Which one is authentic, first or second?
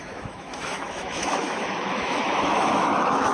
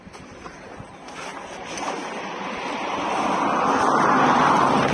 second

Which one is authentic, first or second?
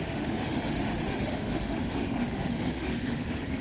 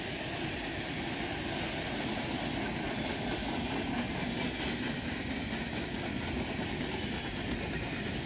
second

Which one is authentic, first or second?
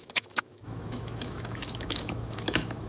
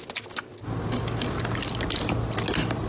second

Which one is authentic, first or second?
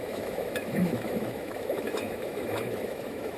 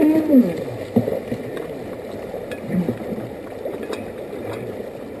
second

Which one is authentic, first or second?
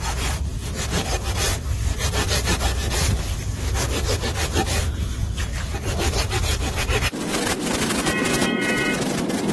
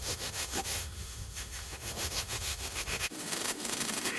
first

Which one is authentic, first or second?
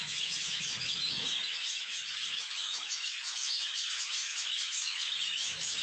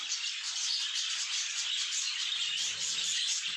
second